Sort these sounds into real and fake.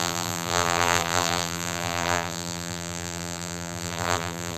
fake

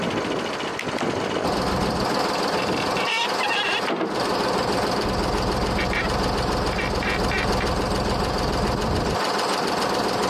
real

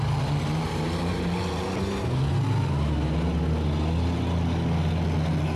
real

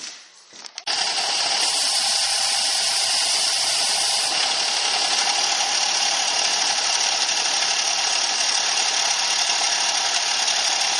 real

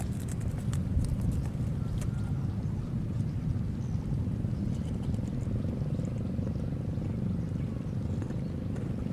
real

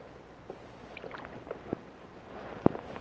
fake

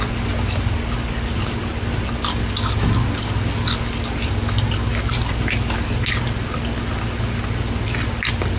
real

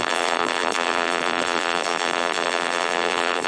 fake